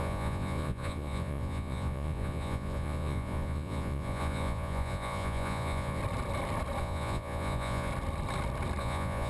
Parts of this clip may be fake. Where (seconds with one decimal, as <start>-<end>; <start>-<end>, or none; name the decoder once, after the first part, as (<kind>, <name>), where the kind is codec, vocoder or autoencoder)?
0.0-6.0 (vocoder, Vocos); 6.8-7.9; 8.8-9.3